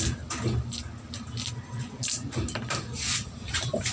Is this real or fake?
real